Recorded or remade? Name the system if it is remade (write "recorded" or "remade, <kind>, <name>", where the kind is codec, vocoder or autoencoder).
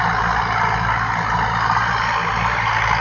recorded